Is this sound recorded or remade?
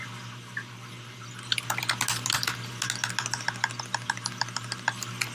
recorded